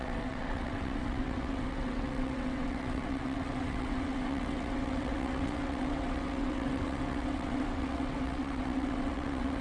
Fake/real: fake